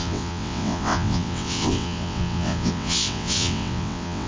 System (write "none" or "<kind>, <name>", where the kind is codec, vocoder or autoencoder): vocoder, WaveNeXt